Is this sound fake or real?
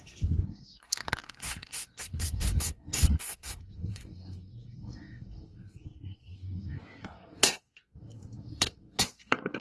fake